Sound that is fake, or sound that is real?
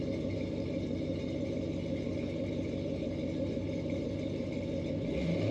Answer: fake